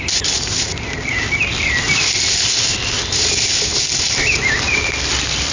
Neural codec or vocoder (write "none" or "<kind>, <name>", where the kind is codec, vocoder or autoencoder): none